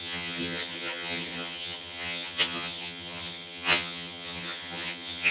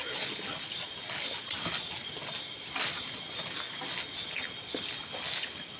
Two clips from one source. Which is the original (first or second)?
second